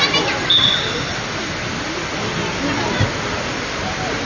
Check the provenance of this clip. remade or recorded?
recorded